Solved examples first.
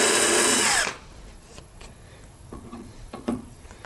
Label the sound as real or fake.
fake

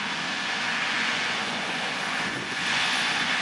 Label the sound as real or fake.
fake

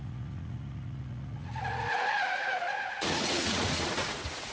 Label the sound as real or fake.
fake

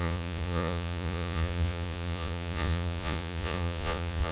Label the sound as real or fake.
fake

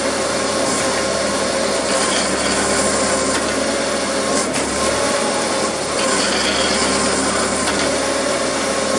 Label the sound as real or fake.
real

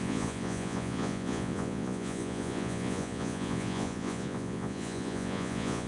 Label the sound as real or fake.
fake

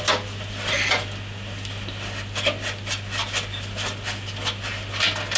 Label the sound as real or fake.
real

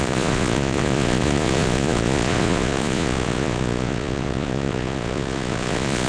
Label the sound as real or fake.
fake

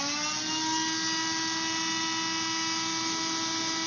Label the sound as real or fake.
real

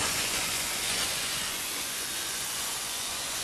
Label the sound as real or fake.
fake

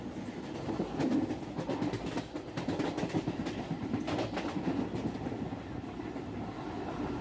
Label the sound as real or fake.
real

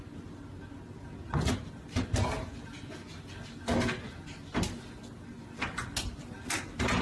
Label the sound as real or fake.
real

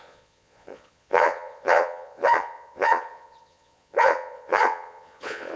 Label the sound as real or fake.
fake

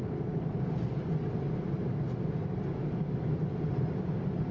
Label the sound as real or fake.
real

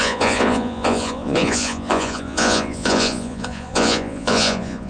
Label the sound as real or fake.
fake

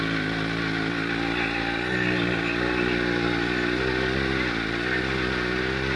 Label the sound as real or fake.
real